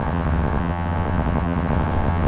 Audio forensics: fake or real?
fake